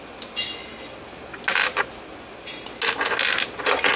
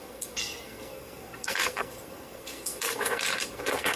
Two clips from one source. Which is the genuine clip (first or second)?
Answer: first